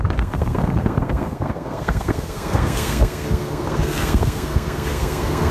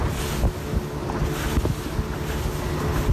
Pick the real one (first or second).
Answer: second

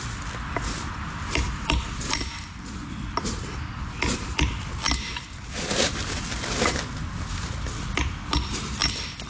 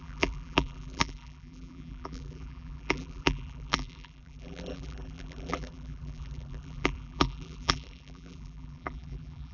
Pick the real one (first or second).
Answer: first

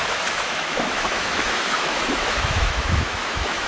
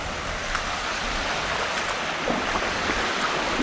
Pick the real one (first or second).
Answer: second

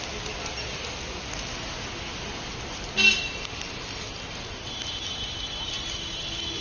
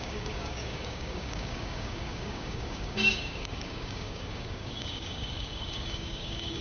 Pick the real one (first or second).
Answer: first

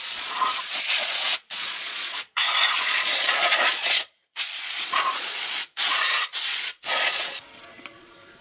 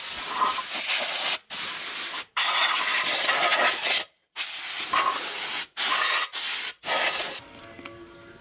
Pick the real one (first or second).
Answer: second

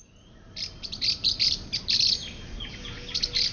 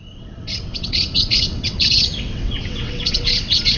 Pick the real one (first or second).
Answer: first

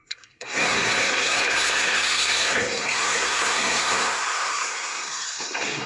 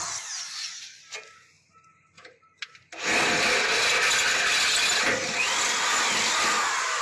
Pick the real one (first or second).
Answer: second